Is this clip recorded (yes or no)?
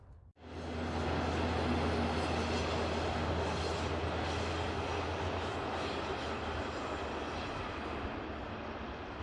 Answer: yes